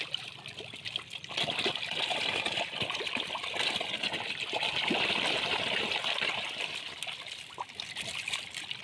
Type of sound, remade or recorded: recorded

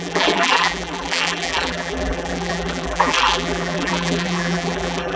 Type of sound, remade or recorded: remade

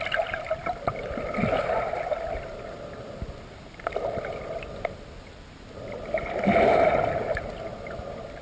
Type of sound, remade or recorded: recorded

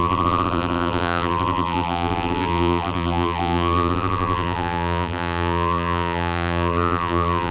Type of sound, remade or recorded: remade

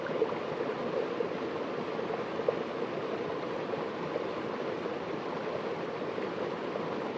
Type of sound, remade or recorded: recorded